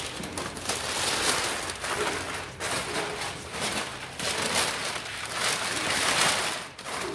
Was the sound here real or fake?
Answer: real